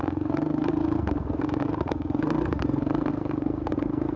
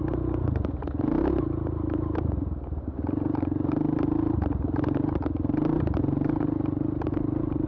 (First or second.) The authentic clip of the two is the second